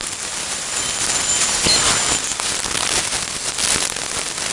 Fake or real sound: real